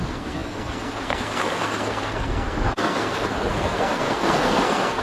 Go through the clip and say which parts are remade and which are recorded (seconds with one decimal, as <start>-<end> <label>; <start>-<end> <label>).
0.0-5.0 remade